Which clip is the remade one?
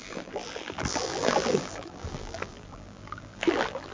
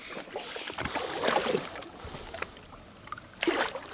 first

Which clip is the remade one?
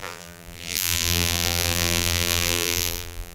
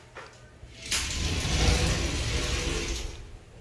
first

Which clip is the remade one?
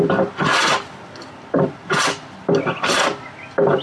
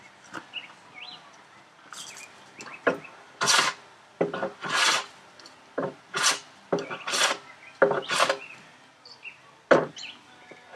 first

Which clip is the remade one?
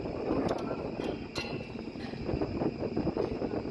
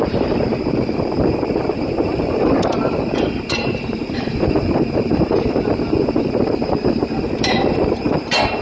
second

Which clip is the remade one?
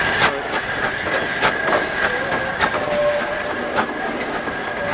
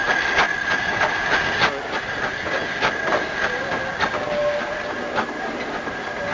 first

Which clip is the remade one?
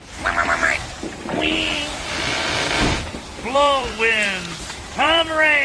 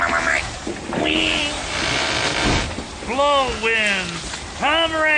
first